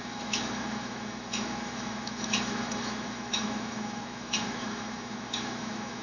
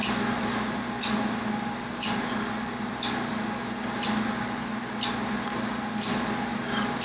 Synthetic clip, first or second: first